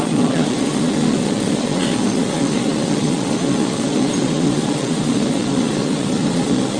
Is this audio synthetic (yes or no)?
yes